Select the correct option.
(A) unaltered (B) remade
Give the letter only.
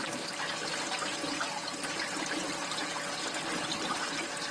A